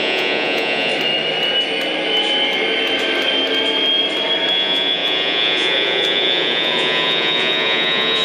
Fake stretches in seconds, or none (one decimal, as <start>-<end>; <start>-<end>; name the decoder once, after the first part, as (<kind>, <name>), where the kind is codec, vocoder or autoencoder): 0.0-0.9 (vocoder, Vocos); 4.5-8.2